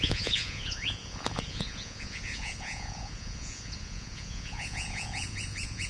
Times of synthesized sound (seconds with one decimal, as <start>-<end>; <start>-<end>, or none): 0.0-5.9